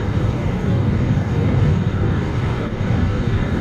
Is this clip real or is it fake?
fake